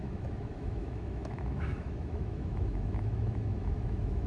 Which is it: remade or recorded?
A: remade